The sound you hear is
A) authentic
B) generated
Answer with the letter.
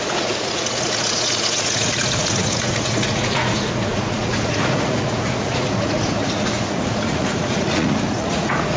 B